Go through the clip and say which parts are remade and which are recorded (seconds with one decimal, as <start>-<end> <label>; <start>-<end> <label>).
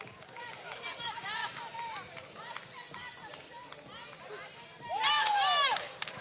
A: 0.0-1.4 remade; 1.4-5.1 recorded; 5.1-6.2 remade